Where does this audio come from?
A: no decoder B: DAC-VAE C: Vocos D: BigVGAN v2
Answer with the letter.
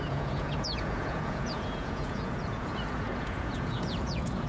C